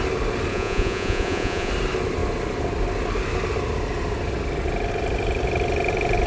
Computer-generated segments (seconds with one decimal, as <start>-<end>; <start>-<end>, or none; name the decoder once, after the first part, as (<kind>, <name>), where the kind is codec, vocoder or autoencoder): 0.5-1.7 (vocoder, Vocos)